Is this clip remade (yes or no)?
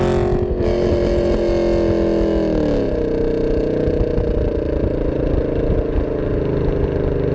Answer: no